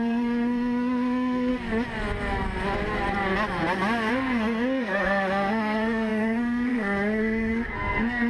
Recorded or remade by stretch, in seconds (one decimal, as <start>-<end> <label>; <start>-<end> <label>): 0.0-1.5 remade; 1.5-4.1 recorded; 4.1-8.3 remade